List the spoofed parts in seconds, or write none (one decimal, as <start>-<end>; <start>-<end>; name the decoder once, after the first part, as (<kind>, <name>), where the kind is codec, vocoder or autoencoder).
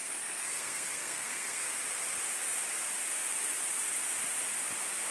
0.0-1.7 (codec, SNAC)